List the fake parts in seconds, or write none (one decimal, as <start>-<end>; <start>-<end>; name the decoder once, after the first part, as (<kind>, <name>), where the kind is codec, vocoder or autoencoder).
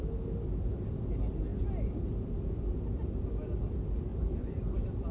4.1-5.1 (vocoder, BigVGAN v2)